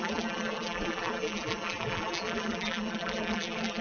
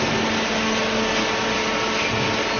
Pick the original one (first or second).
second